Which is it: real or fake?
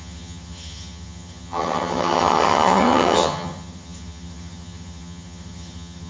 fake